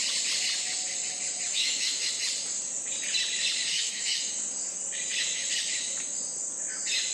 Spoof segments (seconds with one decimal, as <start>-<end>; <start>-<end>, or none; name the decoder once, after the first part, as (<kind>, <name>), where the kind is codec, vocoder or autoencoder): 1.5-2.1 (autoencoder, DAC-VAE); 3.7-4.3